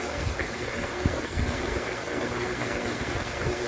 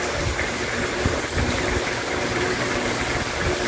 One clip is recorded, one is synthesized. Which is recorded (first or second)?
second